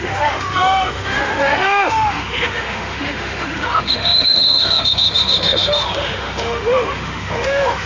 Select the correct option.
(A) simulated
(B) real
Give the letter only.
A